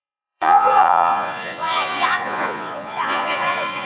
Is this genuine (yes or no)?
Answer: no